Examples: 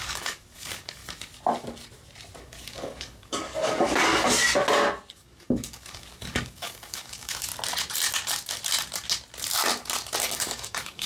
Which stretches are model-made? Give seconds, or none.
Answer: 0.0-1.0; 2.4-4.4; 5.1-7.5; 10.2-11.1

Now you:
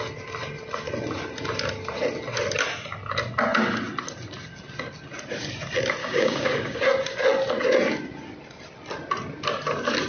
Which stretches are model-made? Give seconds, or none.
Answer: 6.0-6.8

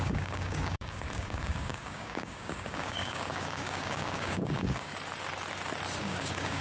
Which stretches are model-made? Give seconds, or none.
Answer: 0.0-4.9; 6.0-6.6